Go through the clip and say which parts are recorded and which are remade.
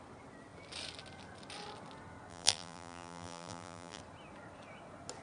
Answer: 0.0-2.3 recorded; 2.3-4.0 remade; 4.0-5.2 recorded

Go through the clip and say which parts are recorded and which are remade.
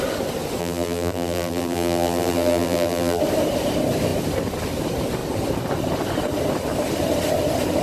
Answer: 0.0-0.6 recorded; 0.6-3.2 remade; 3.2-7.8 recorded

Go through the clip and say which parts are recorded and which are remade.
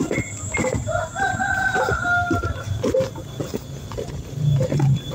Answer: 0.0-3.4 remade; 3.4-4.0 recorded; 4.0-5.1 remade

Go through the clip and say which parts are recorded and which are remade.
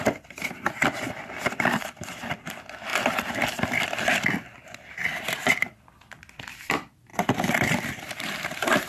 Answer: 0.0-8.9 remade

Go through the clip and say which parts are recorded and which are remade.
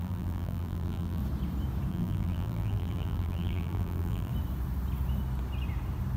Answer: 0.0-1.2 remade; 1.2-1.9 recorded; 1.9-4.3 remade; 4.3-6.2 recorded